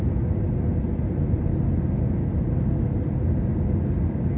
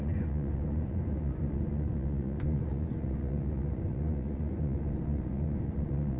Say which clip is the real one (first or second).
first